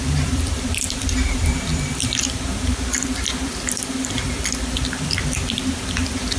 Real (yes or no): no